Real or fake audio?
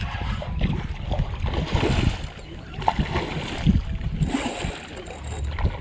real